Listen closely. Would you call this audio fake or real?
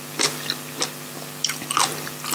real